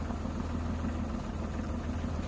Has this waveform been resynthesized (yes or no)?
no